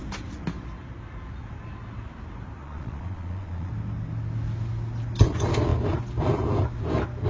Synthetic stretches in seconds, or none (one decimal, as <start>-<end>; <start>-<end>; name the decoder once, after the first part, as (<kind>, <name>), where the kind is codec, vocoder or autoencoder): 2.6-3.7 (vocoder, Vocos)